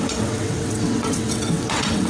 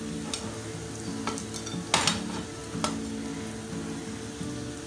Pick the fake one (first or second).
first